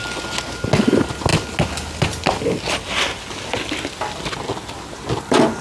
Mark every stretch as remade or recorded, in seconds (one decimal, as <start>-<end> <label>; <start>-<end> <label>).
0.0-5.6 recorded